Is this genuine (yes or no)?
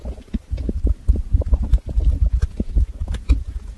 yes